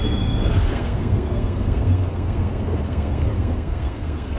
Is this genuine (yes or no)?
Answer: no